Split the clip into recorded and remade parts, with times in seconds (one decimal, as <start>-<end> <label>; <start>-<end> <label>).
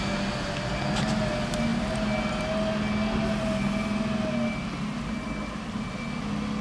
0.0-6.6 recorded